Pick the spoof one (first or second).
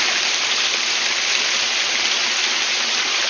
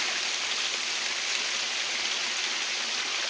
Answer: first